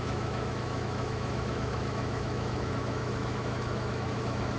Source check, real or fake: fake